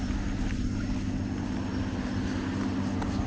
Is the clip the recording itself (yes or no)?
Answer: yes